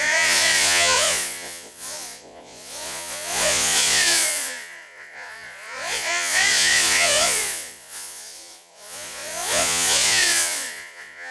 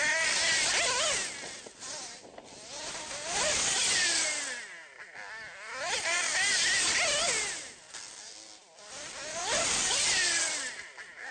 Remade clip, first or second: first